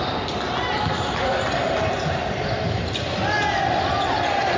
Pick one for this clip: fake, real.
real